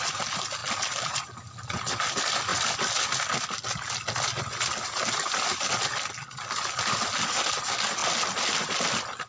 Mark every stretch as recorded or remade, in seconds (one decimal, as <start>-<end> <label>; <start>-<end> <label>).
0.0-9.3 recorded

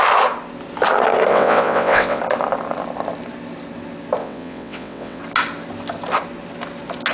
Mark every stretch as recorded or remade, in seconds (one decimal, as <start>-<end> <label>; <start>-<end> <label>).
0.0-1.3 recorded; 1.3-2.2 remade; 2.2-4.2 recorded; 4.2-5.2 remade; 5.2-7.1 recorded

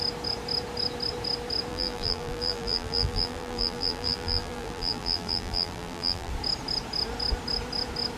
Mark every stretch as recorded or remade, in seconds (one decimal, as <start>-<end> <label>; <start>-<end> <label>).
0.0-1.7 recorded; 1.7-6.3 remade; 6.3-8.2 recorded

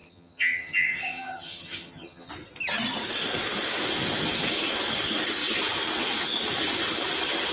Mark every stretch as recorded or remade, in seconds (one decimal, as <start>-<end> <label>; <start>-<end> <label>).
0.0-2.3 remade; 2.3-7.5 recorded

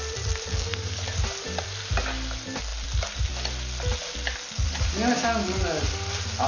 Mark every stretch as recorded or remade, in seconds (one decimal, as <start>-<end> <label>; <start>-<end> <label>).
0.0-0.5 recorded; 0.5-1.0 remade; 1.0-6.5 recorded

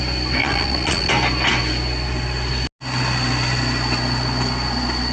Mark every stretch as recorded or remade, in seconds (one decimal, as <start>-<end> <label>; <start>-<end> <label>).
0.0-0.4 recorded; 0.4-1.1 remade; 1.1-5.1 recorded